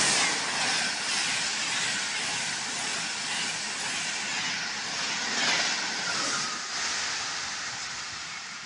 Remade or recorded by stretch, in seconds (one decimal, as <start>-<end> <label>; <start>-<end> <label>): 0.0-8.7 recorded